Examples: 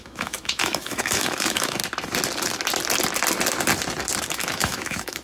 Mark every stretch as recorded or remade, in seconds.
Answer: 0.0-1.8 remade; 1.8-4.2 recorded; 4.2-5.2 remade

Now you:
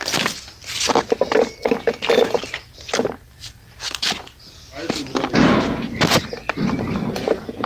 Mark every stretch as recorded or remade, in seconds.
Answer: 0.0-7.7 recorded

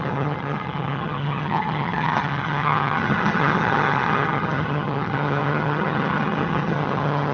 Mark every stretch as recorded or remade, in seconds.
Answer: 0.0-7.3 remade

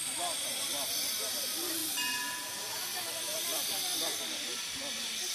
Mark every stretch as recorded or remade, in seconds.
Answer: 0.0-1.8 remade; 1.8-3.0 recorded; 3.0-5.3 remade

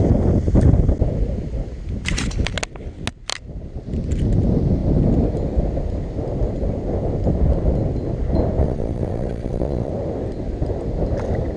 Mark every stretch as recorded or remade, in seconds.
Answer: 0.0-8.6 recorded; 8.6-9.9 remade; 9.9-11.6 recorded